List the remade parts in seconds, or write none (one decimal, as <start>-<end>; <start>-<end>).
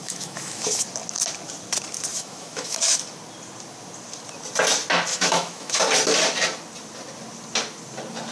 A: 0.0-0.8; 2.1-3.0; 5.1-5.8